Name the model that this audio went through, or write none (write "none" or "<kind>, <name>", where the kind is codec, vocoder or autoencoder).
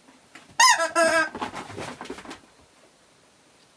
none